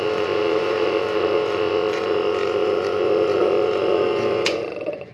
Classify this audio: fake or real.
fake